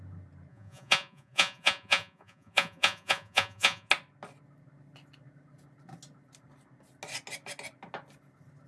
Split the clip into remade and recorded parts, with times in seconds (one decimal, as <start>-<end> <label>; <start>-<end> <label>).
0.0-0.5 recorded; 0.5-3.9 remade; 3.9-8.7 recorded